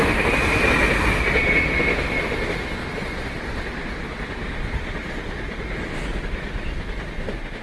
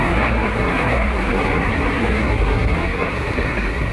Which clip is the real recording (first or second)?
first